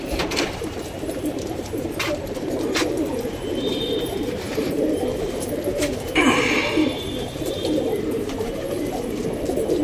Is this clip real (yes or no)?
no